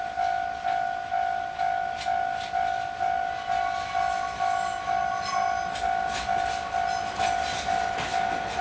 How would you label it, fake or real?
real